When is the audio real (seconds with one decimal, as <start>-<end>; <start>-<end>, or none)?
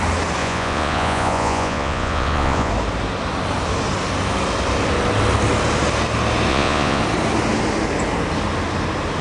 0.0-0.4; 2.7-6.5; 7.0-9.2